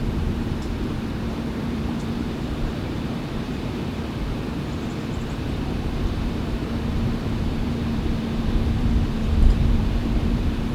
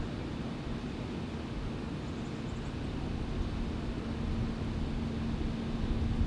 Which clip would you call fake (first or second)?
first